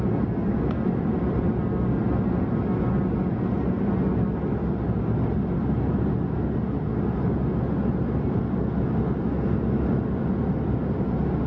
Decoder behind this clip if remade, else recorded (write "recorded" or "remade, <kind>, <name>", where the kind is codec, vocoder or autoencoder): recorded